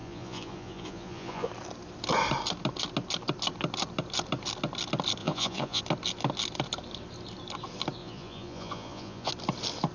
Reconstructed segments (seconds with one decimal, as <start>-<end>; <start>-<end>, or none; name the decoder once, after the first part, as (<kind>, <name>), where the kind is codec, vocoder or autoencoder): 0.0-1.5 (vocoder, Vocos); 5.2-5.8; 8.0-9.3